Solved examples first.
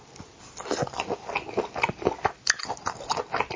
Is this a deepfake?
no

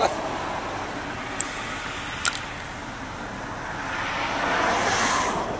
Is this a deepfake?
no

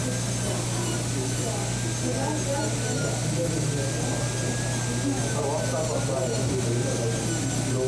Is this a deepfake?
no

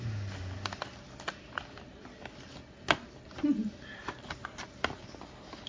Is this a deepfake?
no